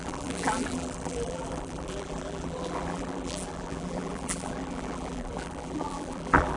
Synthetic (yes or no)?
yes